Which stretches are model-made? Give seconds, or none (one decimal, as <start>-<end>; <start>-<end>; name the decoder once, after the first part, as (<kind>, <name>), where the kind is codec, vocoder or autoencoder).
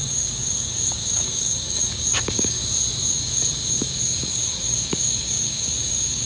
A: 0.0-2.6 (codec, DAC); 3.1-6.3